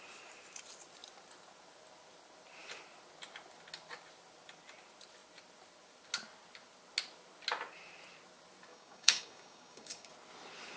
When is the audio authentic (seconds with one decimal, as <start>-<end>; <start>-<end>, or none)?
0.0-8.7; 10.1-10.8